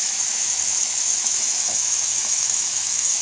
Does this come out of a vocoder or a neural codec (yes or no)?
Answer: yes